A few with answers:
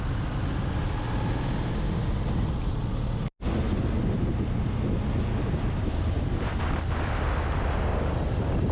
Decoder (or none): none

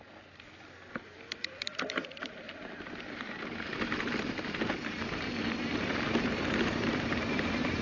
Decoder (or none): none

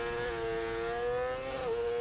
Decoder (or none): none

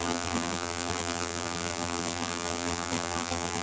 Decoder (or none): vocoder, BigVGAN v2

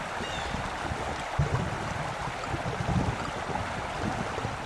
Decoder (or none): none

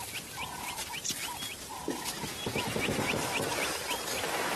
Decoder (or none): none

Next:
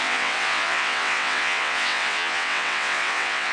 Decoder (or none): vocoder, WaveNeXt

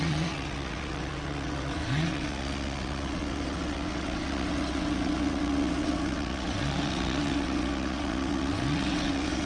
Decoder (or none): vocoder, WaveNeXt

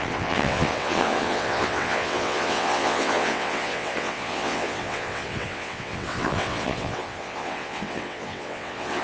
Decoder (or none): vocoder, WaveNeXt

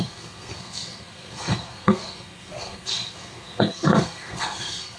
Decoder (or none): codec, SNAC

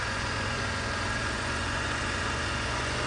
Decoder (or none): vocoder, Vocos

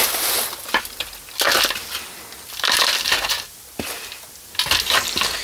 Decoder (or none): none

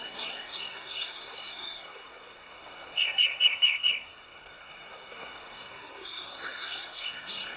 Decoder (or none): codec, SNAC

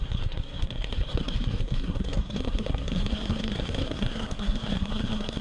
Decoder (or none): codec, SNAC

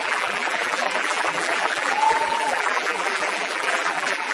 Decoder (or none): vocoder, BigVGAN v2